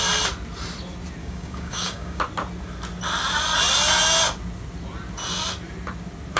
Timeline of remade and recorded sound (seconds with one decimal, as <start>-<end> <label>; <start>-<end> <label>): 0.0-1.2 recorded; 1.2-2.2 remade; 2.2-6.4 recorded